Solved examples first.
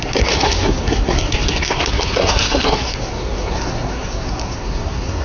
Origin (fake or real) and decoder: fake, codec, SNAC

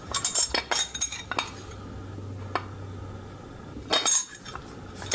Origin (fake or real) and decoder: real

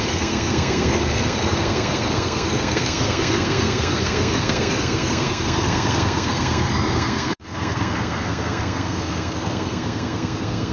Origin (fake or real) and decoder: fake, codec, SNAC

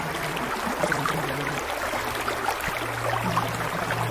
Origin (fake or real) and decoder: real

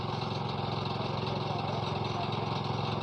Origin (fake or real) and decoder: real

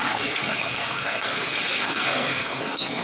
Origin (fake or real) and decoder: fake, codec, SNAC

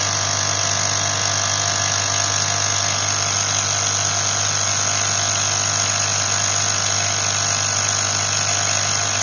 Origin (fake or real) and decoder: real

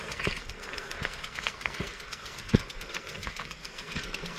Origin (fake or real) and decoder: fake, codec, SNAC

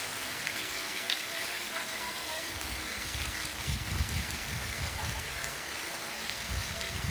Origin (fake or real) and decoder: fake, codec, SNAC